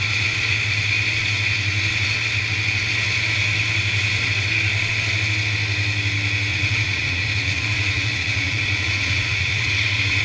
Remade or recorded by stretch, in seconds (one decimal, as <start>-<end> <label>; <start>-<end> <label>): 0.0-6.5 recorded; 6.5-10.2 remade